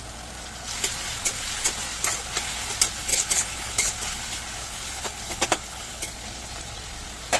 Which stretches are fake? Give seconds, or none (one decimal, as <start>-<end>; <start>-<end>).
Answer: 3.1-3.9; 4.6-6.1